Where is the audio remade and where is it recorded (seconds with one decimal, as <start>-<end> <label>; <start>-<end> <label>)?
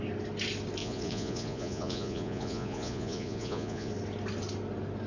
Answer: 0.0-0.8 recorded; 0.8-3.9 remade; 3.9-5.1 recorded